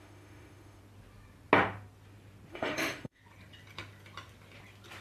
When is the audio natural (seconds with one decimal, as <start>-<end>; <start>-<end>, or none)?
0.8-2.5; 3.2-5.0